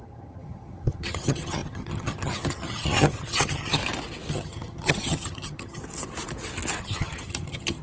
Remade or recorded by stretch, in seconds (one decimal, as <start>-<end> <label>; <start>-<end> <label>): 0.0-3.8 remade; 3.8-4.3 recorded; 4.3-5.8 remade; 5.8-6.8 recorded; 6.8-7.8 remade